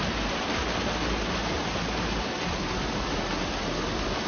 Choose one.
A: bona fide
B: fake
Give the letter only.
A